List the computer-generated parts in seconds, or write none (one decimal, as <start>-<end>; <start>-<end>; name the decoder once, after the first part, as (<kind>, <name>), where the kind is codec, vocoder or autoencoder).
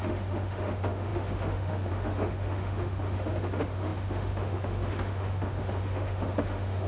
0.0-6.9 (autoencoder, DAC-VAE)